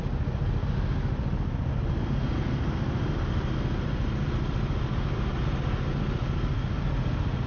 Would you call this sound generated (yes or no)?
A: no